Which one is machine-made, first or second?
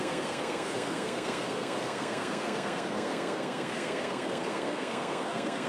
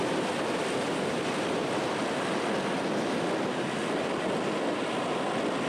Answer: first